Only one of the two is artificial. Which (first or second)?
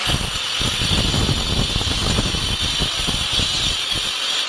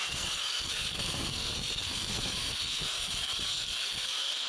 second